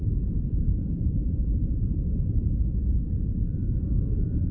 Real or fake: fake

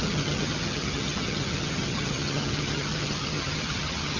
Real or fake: fake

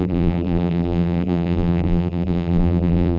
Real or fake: fake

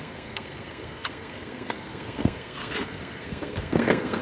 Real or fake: fake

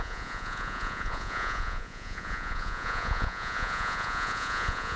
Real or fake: fake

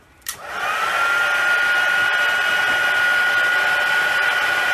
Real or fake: real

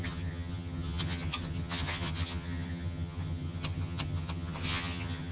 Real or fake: fake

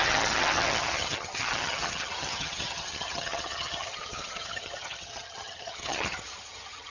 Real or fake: fake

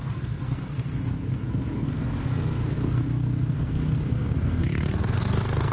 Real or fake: fake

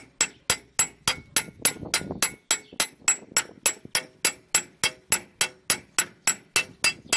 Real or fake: real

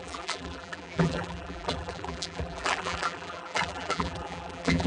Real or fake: fake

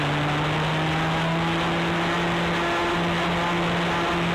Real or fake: real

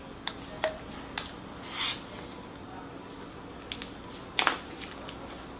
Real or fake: real